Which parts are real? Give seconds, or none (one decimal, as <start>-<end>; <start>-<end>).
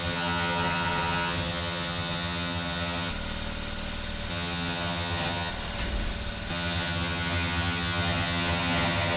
3.1-4.3; 5.5-6.5